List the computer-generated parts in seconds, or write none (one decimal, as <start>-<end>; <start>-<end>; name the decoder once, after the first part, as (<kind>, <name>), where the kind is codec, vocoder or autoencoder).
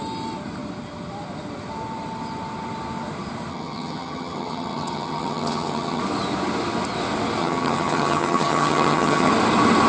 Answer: 3.5-6.0 (vocoder, HiFi-GAN); 7.4-9.3